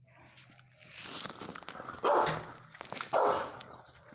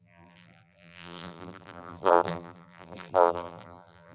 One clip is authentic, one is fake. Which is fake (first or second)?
second